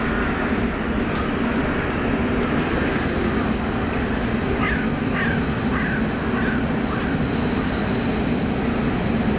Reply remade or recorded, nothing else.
recorded